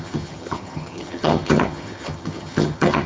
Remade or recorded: remade